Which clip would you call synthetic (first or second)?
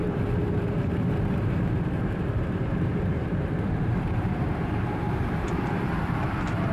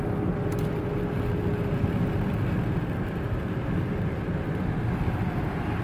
first